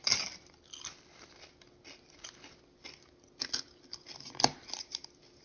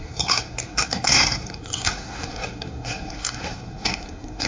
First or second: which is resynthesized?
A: second